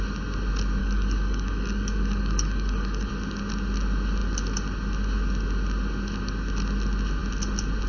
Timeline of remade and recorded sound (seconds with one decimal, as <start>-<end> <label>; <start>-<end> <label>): 0.0-0.8 recorded; 0.8-3.1 remade; 3.1-7.9 recorded